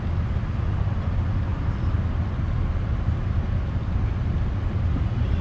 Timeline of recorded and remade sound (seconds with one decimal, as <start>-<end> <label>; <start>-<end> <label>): 0.0-5.4 recorded